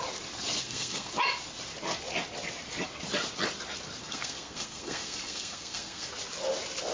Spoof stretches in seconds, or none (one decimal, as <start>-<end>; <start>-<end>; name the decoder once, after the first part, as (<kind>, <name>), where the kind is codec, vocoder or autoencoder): 0.6-1.1 (codec, SNAC); 4.0-6.1